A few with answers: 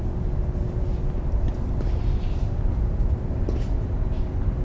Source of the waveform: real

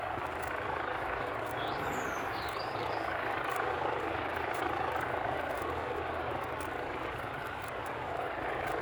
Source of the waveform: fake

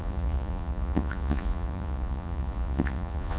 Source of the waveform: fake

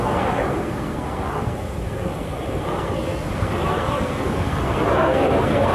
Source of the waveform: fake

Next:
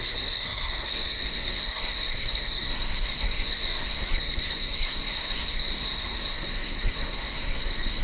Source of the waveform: fake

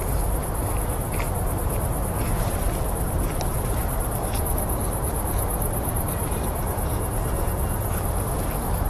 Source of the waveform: fake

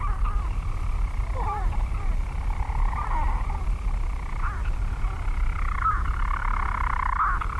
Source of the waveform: real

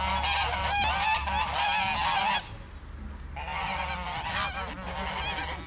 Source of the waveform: real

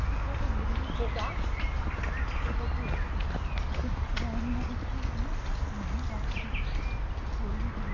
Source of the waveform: real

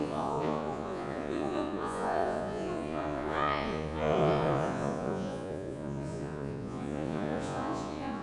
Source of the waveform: fake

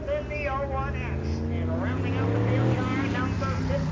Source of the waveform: real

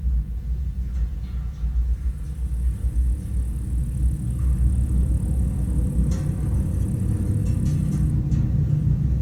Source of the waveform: real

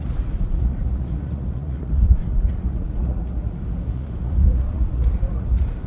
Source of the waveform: fake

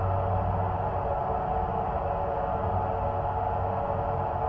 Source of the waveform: real